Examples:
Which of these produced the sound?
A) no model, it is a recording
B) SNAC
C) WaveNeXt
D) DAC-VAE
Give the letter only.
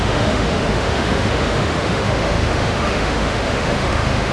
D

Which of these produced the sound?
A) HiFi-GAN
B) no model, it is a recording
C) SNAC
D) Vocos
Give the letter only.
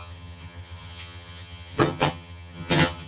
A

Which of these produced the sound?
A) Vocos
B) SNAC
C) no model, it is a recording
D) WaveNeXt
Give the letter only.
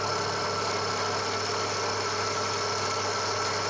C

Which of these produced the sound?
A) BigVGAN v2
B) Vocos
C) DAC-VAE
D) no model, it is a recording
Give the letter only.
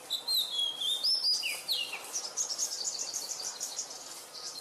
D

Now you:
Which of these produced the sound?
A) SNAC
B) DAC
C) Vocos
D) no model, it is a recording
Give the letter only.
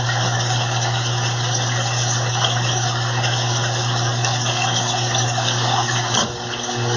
B